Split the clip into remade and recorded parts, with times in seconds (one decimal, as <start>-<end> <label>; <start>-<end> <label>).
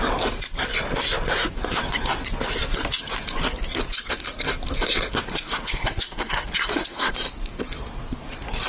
0.0-5.3 recorded; 5.3-7.1 remade; 7.1-8.7 recorded